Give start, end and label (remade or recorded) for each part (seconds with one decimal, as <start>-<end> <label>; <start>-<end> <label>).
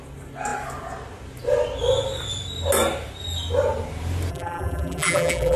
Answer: 0.0-4.3 recorded; 4.3-5.6 remade